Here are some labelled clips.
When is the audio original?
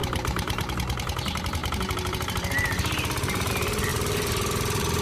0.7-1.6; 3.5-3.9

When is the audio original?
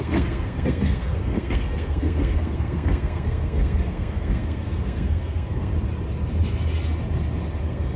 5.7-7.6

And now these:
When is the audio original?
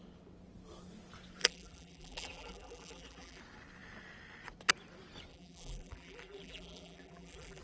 0.0-1.4; 3.4-5.3